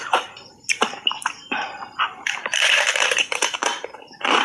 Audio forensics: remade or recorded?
remade